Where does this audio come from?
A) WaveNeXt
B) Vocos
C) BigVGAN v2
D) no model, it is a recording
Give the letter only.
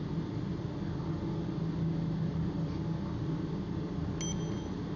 D